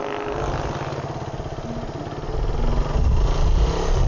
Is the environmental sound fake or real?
real